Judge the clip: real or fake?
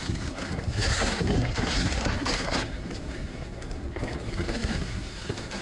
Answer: fake